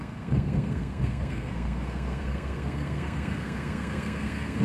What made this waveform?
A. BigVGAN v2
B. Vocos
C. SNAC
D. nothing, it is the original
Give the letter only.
C